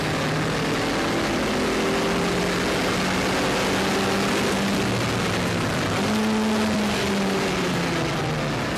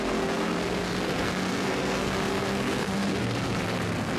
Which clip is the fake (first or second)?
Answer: second